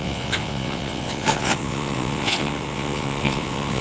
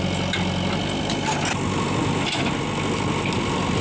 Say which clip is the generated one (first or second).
first